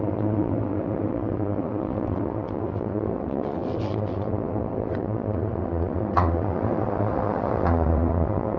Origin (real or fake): fake